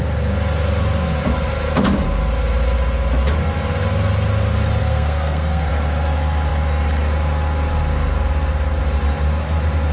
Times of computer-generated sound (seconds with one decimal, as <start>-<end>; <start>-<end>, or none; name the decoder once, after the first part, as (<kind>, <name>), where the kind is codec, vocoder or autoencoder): 4.8-5.7 (codec, SNAC)